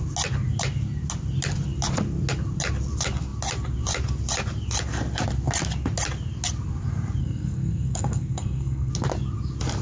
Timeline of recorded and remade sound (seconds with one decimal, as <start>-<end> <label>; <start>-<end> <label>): 0.0-7.2 recorded; 7.2-8.9 remade; 8.9-9.8 recorded